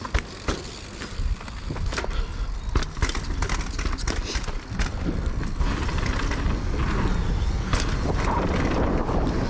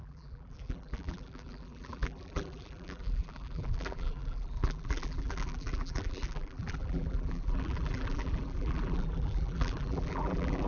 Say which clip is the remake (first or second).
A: second